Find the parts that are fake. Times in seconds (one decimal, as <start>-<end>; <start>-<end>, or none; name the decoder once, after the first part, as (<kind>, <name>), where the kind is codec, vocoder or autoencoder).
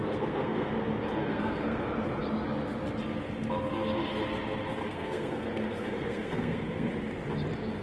0.0-0.7 (codec, SNAC); 1.3-1.8; 4.8-6.9